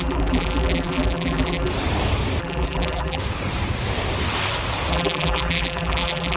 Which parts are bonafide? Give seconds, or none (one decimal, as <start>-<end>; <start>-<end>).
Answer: 1.7-2.4; 3.2-4.9